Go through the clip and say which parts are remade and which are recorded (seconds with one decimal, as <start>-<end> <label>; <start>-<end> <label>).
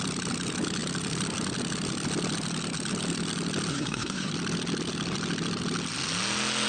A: 0.0-3.7 recorded; 3.7-4.3 remade; 4.3-6.7 recorded